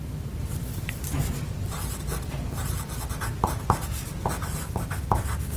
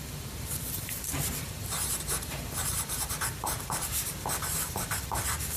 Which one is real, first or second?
first